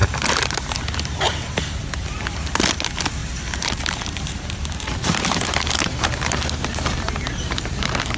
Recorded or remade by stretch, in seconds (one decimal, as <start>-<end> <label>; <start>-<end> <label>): 0.0-0.8 remade; 0.8-3.2 recorded; 3.2-8.2 remade